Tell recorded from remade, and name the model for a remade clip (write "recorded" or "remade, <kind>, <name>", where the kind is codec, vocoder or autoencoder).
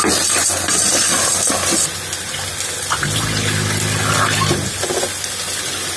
recorded